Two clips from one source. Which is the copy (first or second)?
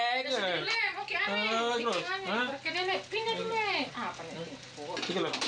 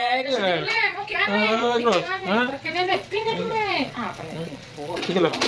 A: second